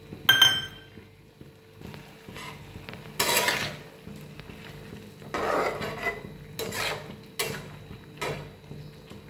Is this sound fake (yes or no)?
no